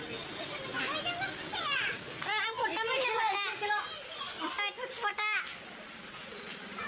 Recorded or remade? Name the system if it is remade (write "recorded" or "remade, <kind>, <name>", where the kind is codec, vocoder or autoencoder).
recorded